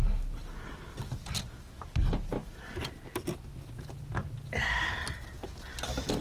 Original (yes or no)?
yes